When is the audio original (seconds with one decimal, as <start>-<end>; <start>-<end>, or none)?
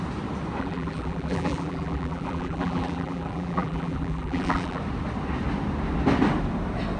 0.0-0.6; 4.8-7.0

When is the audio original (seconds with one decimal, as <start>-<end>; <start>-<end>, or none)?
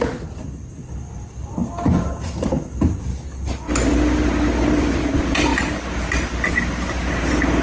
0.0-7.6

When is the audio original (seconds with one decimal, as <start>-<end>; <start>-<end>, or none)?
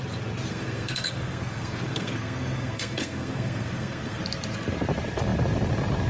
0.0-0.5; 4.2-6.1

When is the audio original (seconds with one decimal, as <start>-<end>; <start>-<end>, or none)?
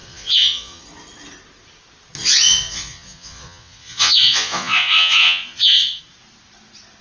0.8-2.2; 6.0-7.0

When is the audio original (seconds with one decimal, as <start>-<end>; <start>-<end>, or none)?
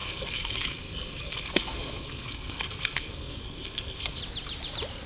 4.2-5.1